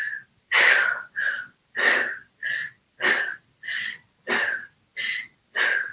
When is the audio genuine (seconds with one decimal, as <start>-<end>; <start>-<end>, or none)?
4.9-5.4